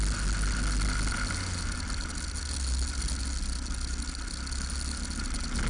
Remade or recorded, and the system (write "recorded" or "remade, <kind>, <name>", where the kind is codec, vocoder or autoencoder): recorded